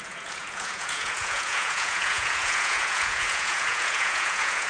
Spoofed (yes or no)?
yes